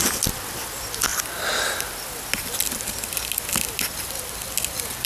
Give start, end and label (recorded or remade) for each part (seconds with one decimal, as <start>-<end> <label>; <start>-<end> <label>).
0.0-5.1 recorded